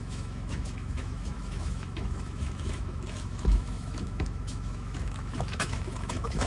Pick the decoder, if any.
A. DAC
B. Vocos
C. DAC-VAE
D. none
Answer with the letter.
C